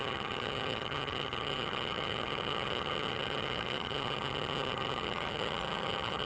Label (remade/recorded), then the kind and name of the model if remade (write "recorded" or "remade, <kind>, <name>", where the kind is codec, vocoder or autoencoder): remade, vocoder, HiFi-GAN